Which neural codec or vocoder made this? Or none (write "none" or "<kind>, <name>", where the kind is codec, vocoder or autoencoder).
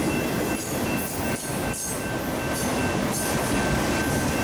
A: none